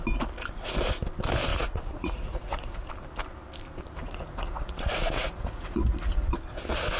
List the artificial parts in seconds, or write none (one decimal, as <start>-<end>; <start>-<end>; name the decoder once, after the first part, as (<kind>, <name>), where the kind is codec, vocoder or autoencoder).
1.5-2.9 (vocoder, Vocos); 4.0-6.4